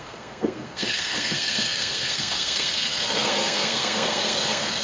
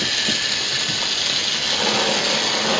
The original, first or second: second